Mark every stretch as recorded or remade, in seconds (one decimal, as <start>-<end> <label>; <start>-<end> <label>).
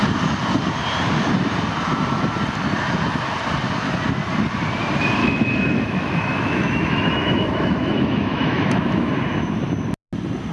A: 0.0-5.2 recorded; 5.2-9.1 remade; 9.1-10.5 recorded